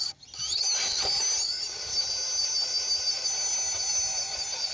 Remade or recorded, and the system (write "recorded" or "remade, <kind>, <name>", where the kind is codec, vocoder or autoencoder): recorded